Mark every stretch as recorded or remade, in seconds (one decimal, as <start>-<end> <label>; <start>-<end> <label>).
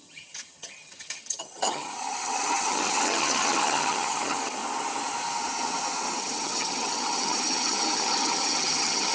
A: 0.0-4.6 remade; 4.6-6.2 recorded; 6.2-9.1 remade